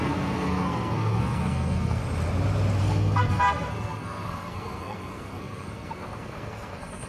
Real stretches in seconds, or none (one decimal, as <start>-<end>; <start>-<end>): 2.0-2.8